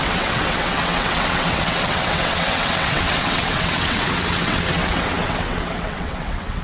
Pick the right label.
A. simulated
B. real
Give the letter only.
A